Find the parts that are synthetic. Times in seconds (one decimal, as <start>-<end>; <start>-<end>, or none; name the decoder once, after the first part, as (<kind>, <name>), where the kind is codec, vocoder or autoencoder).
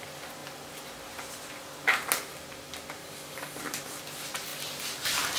3.0-3.6 (codec, DAC)